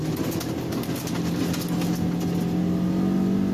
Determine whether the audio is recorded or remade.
recorded